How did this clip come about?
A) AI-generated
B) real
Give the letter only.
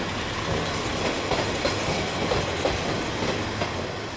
B